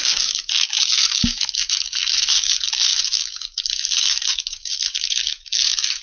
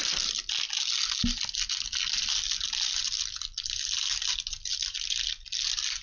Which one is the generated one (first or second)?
first